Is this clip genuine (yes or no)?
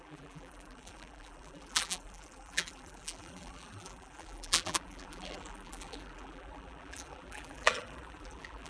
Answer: no